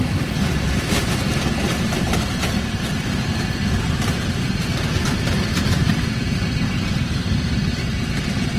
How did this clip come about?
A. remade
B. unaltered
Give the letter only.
A